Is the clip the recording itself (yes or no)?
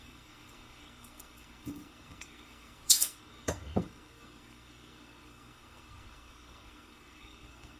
no